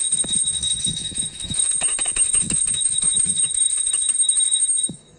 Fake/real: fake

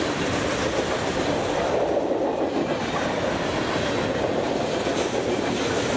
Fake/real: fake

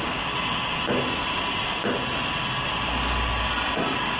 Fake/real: real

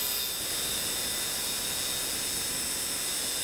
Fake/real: real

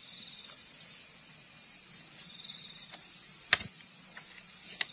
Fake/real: real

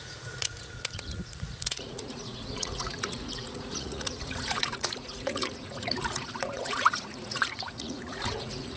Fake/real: fake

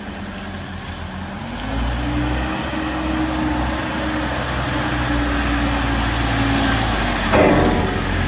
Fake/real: real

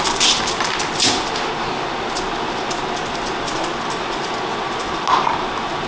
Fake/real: real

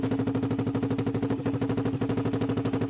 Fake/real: real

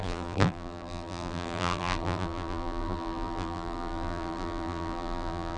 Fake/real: fake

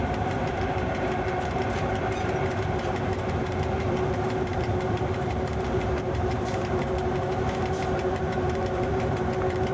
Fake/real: fake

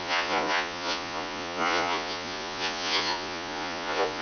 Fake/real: fake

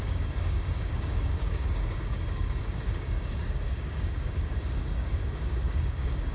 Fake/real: fake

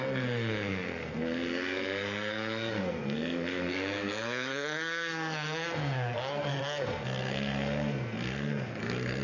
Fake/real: fake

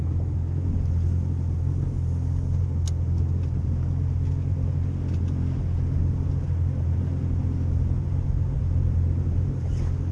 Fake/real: real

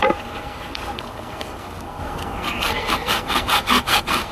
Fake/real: fake